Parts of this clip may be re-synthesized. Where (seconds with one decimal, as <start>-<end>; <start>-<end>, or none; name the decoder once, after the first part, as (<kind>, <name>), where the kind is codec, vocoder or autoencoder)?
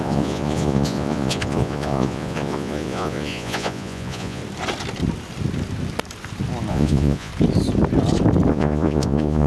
0.0-4.4 (vocoder, Vocos); 6.7-7.3; 8.5-9.5